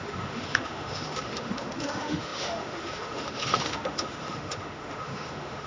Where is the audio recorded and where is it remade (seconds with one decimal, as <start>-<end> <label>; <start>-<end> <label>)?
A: 0.0-5.7 remade